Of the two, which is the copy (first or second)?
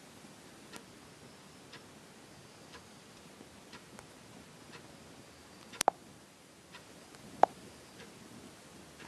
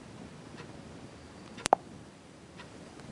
second